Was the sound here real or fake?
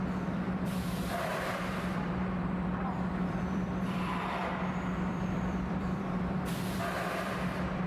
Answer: fake